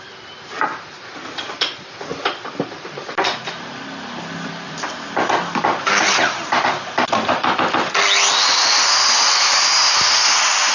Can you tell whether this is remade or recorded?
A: recorded